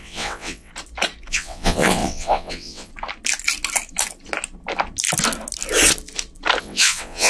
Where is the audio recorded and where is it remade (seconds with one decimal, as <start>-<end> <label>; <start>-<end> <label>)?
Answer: 0.0-0.7 remade; 0.7-1.3 recorded; 1.3-2.9 remade; 2.9-6.6 recorded; 6.6-7.3 remade